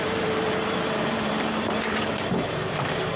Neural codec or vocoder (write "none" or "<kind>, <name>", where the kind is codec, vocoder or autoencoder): vocoder, BigVGAN v2